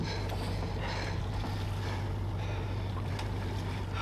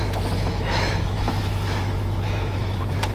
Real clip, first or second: first